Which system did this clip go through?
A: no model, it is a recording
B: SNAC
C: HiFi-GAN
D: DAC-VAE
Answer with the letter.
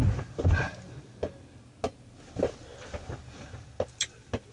A